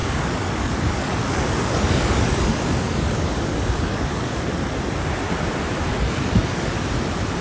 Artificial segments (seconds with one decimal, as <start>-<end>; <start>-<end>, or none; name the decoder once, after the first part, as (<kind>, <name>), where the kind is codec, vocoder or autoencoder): 0.0-4.4 (codec, DAC); 5.9-6.7